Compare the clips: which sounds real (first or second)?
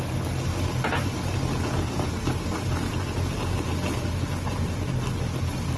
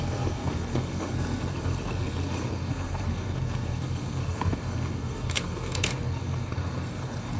first